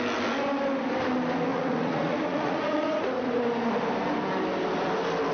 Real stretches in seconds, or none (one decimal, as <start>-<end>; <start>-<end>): 0.0-1.5; 3.4-5.3